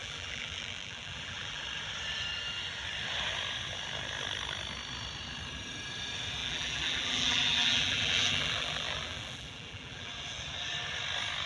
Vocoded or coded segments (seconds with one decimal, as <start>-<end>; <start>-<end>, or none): 0.0-1.6; 6.4-10.1